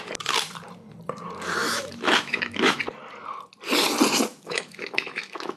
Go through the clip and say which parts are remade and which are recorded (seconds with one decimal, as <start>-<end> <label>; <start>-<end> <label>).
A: 0.0-1.6 recorded; 1.6-2.8 remade; 2.8-4.3 recorded; 4.3-5.6 remade